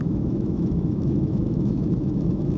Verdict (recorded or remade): remade